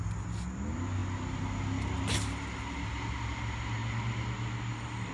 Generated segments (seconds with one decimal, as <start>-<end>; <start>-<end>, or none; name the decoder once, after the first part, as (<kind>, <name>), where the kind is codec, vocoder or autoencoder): none